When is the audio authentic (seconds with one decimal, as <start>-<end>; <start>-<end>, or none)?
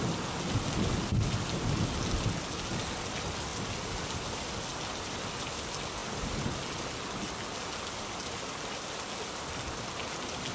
0.0-10.5